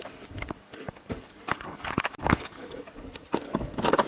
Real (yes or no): no